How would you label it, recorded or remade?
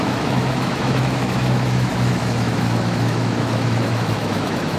remade